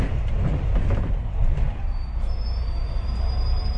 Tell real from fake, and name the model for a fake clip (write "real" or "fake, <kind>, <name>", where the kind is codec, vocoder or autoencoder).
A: fake, vocoder, BigVGAN v2